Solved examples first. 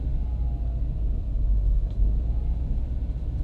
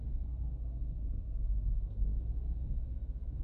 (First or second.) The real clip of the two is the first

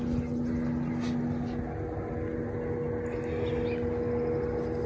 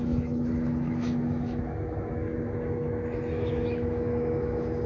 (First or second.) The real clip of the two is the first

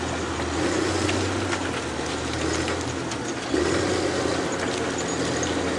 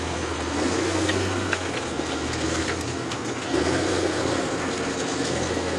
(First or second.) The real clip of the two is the first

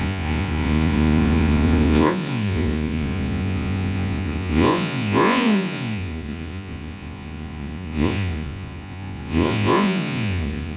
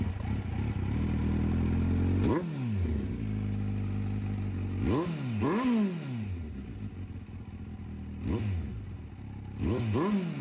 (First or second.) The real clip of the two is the second